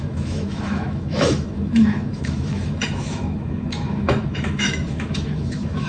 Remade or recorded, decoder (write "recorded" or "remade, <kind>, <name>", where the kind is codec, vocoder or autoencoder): remade, autoencoder, DAC-VAE